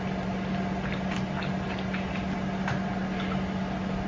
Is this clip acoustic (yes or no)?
yes